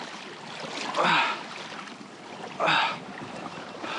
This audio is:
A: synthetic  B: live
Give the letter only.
B